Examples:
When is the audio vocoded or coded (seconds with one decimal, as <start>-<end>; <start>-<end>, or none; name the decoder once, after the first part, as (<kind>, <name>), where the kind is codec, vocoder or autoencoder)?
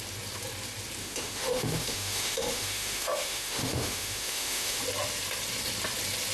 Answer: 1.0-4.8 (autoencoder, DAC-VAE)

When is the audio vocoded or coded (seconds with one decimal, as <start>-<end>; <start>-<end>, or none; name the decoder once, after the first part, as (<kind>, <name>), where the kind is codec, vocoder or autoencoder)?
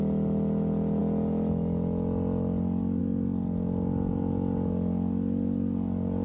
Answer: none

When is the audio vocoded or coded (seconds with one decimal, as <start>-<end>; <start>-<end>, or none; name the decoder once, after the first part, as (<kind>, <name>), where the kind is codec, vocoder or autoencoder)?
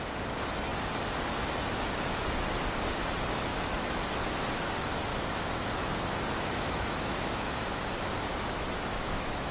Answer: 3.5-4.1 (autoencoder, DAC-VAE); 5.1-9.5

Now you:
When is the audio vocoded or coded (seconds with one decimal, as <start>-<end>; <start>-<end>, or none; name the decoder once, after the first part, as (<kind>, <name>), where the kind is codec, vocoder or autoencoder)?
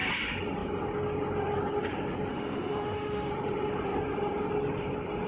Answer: 2.3-3.3 (autoencoder, DAC-VAE)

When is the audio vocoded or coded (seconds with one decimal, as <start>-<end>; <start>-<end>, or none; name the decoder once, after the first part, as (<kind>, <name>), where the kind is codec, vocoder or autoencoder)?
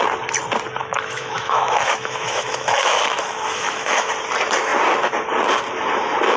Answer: 0.8-4.1 (autoencoder, DAC-VAE)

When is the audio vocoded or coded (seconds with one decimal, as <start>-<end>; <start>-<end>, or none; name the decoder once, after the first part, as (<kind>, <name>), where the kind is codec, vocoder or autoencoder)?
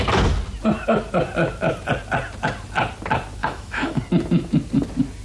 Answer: 3.4-4.0 (autoencoder, DAC-VAE)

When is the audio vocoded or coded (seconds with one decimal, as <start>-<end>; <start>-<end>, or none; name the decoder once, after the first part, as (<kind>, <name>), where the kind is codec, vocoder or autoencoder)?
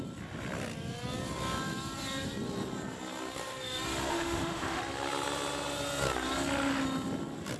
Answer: 4.1-4.8 (autoencoder, DAC-VAE)